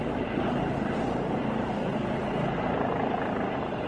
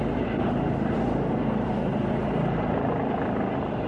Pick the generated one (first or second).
first